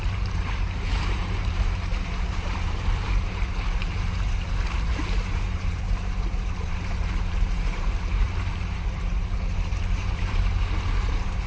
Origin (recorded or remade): remade